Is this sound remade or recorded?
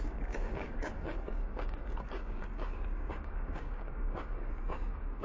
remade